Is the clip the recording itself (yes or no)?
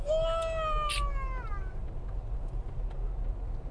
yes